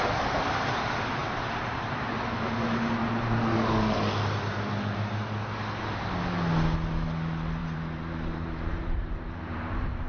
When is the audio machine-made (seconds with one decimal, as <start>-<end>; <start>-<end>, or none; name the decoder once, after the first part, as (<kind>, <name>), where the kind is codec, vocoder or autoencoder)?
1.2-2.1 (vocoder, BigVGAN v2); 7.6-10.1